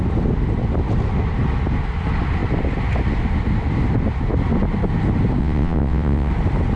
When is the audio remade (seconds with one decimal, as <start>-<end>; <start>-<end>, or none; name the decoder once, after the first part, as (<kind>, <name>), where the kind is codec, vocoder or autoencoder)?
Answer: 5.4-6.3 (vocoder, WaveNeXt)